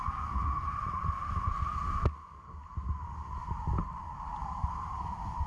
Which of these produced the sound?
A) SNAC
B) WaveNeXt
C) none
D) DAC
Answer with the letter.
C